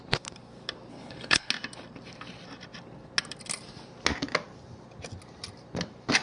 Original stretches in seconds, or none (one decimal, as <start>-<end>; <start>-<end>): 0.0-0.9; 1.5-6.2